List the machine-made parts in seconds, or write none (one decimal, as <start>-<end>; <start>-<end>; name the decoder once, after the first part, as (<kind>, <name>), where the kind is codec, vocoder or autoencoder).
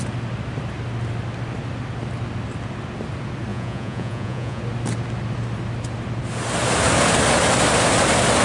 3.5-4.6 (vocoder, Vocos)